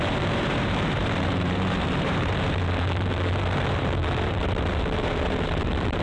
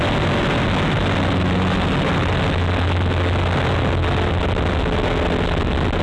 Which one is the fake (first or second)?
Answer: first